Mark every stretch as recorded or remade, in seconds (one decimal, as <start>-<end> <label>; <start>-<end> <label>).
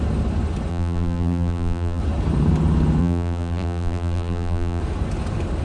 0.0-0.7 recorded; 0.7-2.0 remade; 2.0-3.0 recorded; 3.0-4.8 remade; 4.8-5.6 recorded